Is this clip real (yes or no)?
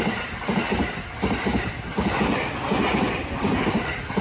yes